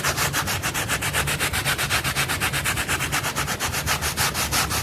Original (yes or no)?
yes